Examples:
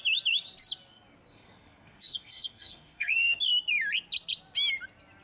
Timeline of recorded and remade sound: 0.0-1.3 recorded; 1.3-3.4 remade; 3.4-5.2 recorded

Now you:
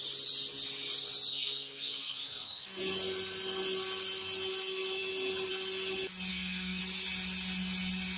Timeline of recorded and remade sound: 0.0-1.3 recorded; 1.3-2.8 remade; 2.8-6.3 recorded; 6.3-6.8 remade; 6.8-8.2 recorded

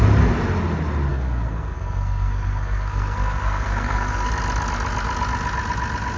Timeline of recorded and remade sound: 0.0-1.1 recorded; 1.1-4.3 remade; 4.3-6.2 recorded

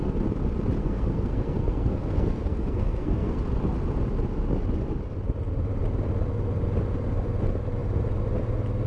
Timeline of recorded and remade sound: 0.0-0.8 recorded; 0.8-3.4 remade; 3.4-8.9 recorded

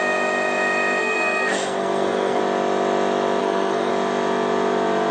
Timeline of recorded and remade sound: 0.0-1.0 recorded; 1.0-2.4 remade; 2.4-3.4 recorded; 3.4-3.9 remade; 3.9-5.1 recorded

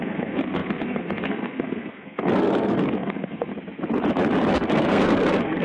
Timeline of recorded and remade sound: 0.0-3.5 remade; 3.5-4.5 recorded; 4.5-5.6 remade

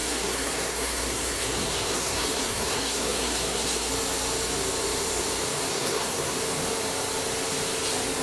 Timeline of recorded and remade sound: 0.0-3.9 remade; 3.9-5.7 recorded; 5.7-6.4 remade; 6.4-8.2 recorded